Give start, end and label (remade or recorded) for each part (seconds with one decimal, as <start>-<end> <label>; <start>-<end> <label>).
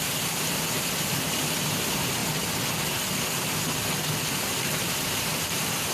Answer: 0.0-2.2 remade; 2.2-4.5 recorded; 4.5-5.9 remade